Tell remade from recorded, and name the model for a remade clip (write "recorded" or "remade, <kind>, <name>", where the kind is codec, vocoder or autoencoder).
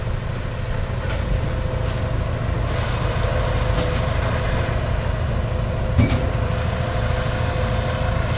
recorded